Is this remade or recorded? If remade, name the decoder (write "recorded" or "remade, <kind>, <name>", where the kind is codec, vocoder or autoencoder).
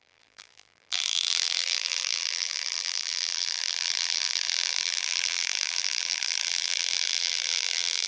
remade, vocoder, BigVGAN v2